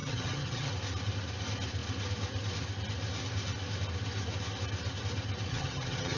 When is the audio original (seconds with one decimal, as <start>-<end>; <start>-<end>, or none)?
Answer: 0.7-5.5